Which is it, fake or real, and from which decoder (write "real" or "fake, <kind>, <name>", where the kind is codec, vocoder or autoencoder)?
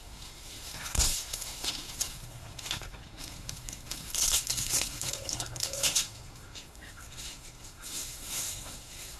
fake, codec, SNAC